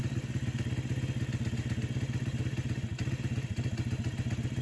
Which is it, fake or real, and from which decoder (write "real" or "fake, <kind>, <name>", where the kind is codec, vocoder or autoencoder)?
real